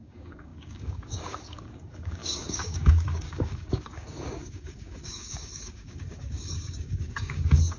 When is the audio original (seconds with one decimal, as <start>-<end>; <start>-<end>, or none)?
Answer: none